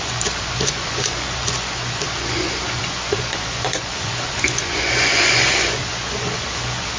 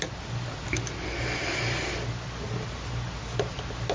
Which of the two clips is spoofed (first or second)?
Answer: first